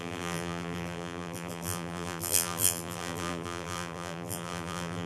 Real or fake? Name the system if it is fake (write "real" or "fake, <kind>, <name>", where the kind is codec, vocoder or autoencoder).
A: fake, vocoder, BigVGAN v2